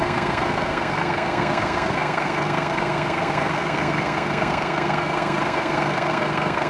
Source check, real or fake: fake